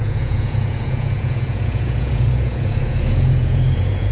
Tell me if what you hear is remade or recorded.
remade